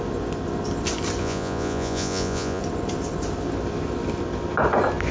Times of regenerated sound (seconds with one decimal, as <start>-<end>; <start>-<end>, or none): 1.2-2.6